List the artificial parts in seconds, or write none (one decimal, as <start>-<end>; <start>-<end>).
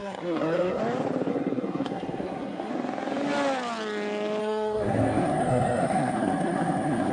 0.0-0.8; 1.3-2.7; 4.4-7.1